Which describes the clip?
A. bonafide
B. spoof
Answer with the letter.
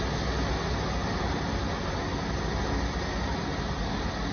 A